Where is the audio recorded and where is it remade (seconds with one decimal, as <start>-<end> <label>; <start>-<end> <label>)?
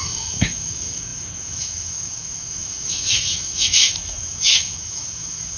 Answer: 0.0-5.6 remade